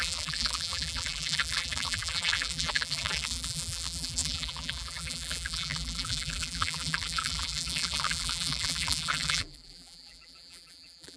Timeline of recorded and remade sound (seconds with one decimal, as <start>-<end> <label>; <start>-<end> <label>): 0.0-11.2 remade